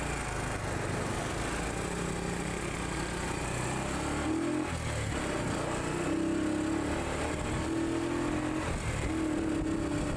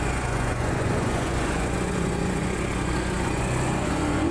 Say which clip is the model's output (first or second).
second